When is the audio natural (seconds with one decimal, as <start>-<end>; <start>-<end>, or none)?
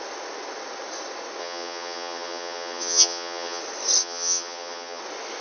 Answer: 0.0-1.4; 3.6-4.0; 5.0-5.4